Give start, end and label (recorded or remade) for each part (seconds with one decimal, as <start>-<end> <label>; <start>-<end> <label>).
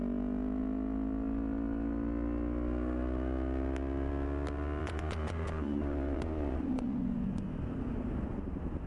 0.0-4.8 recorded; 4.8-7.6 remade; 7.6-8.9 recorded